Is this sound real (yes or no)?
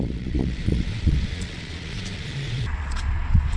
no